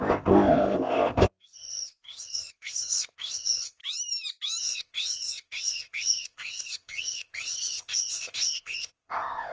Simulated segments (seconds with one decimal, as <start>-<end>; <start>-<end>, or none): 0.0-3.8; 4.6-9.5